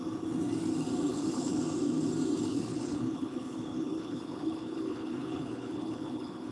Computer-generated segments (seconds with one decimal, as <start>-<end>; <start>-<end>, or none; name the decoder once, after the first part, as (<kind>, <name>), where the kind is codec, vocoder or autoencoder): 1.1-1.6 (codec, HILCodec); 2.5-6.5